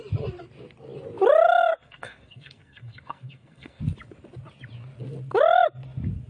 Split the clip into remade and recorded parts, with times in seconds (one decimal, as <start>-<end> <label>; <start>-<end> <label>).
0.0-1.7 recorded; 1.7-3.8 remade; 3.8-6.3 recorded